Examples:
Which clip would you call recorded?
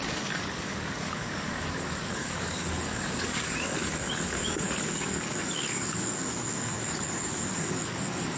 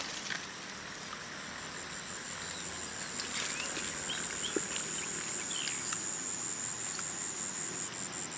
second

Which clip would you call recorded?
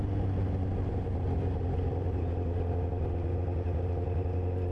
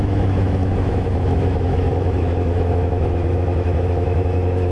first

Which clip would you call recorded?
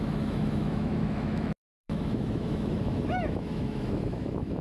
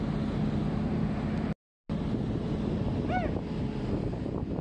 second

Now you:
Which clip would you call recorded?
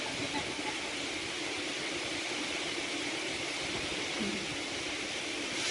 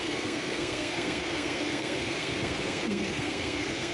first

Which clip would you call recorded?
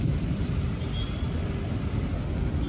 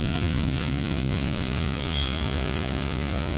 first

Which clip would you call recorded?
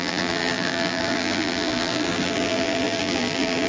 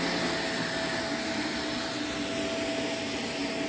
second